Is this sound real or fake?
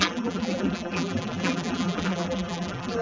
fake